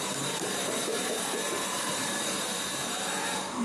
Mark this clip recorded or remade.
remade